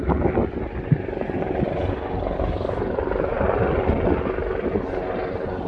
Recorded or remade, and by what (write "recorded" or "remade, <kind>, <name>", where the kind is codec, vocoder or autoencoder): recorded